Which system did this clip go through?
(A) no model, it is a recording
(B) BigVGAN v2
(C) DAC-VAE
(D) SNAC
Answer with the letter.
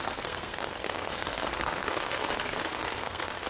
D